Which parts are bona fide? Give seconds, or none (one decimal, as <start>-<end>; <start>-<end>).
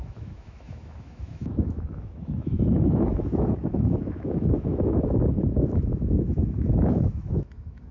none